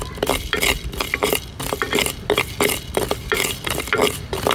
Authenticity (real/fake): real